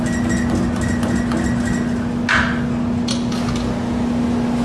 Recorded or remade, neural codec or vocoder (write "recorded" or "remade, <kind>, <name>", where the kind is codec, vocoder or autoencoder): recorded